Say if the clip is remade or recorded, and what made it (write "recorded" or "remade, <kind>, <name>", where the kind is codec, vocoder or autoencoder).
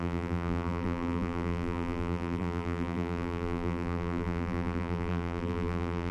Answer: remade, vocoder, BigVGAN v2